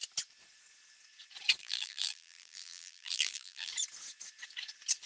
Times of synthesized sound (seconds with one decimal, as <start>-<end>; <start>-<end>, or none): 1.6-3.7